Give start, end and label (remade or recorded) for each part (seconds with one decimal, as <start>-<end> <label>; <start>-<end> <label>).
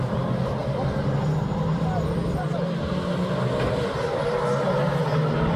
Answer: 0.0-5.6 recorded